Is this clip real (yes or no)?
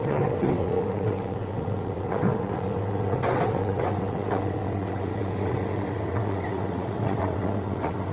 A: no